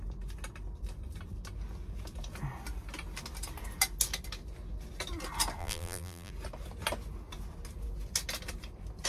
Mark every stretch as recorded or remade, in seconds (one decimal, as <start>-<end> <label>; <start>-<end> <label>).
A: 0.0-5.6 recorded; 5.6-6.3 remade; 6.3-9.1 recorded